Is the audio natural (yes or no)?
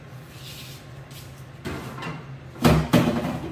yes